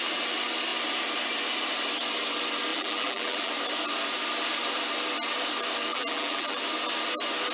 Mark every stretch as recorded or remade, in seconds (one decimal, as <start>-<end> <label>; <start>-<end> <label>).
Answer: 0.0-2.7 recorded; 2.7-3.5 remade; 3.5-5.9 recorded; 5.9-6.6 remade; 6.6-7.5 recorded